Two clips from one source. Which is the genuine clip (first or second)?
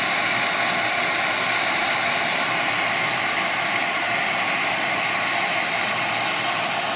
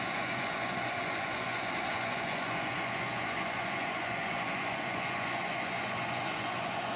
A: first